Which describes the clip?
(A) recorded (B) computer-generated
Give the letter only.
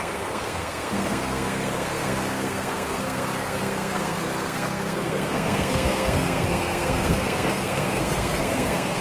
B